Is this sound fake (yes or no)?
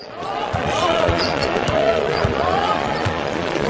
yes